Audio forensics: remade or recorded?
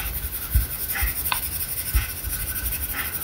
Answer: recorded